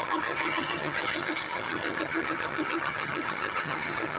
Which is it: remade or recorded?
remade